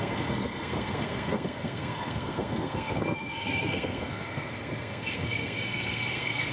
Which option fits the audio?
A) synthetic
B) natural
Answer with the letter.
A